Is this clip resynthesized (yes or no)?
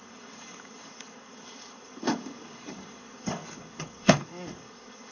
yes